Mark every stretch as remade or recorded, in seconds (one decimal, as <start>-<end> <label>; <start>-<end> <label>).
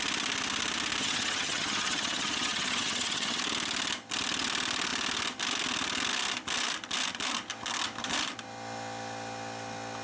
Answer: 0.0-1.0 recorded; 1.0-3.4 remade; 3.4-10.0 recorded